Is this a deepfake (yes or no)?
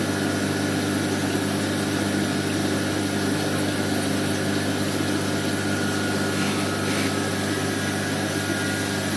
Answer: no